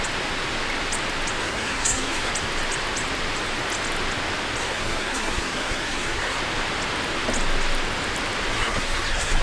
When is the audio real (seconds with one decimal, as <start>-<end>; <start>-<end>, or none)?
0.0-1.4; 2.3-4.6; 6.4-8.5